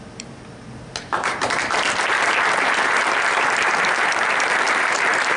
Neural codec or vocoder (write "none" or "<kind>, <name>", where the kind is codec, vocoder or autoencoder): vocoder, BigVGAN v2